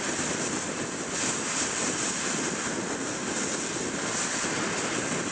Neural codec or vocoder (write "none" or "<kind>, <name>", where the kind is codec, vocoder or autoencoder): none